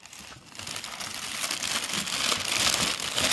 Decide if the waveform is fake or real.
real